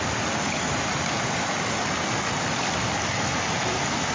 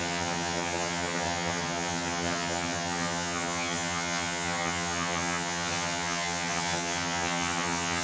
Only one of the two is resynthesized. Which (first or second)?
second